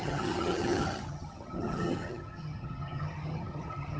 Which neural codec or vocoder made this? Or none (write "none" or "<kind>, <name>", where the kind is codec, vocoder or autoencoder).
vocoder, HiFi-GAN